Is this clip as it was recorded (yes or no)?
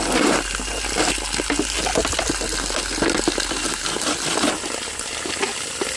yes